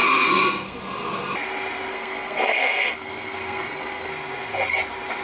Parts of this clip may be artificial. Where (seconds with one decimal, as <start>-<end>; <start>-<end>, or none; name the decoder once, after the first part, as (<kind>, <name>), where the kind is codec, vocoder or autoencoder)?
0.0-0.8 (codec, SNAC); 1.9-4.1

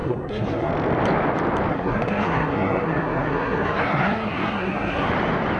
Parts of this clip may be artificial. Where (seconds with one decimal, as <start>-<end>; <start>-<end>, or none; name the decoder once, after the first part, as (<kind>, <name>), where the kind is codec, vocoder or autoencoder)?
0.0-0.7 (codec, SNAC); 1.7-5.1

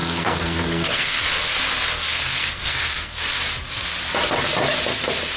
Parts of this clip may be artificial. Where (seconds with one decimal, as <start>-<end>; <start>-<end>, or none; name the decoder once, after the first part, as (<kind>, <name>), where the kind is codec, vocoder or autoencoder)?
0.0-1.3 (codec, SNAC); 2.1-3.4

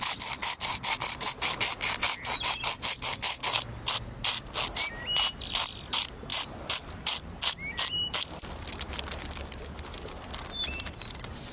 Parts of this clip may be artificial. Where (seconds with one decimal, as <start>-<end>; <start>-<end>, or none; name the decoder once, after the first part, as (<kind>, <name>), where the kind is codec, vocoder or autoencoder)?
none

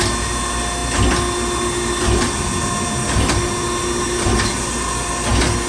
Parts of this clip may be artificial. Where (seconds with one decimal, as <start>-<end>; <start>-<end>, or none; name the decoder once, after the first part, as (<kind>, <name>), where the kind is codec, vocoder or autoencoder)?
none

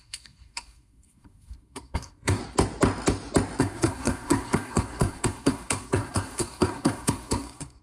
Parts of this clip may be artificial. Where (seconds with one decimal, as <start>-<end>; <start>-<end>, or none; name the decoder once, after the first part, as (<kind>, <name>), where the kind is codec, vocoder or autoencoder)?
0.0-2.4 (codec, SNAC); 3.6-7.8